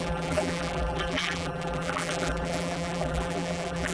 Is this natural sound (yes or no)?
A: no